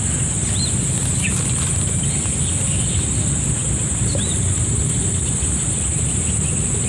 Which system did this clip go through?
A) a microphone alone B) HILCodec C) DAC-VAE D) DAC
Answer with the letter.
A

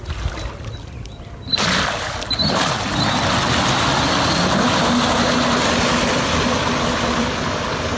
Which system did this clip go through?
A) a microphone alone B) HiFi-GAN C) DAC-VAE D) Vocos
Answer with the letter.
A